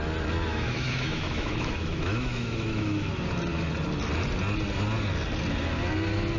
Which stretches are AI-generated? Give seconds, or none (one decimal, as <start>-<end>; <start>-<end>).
0.5-3.1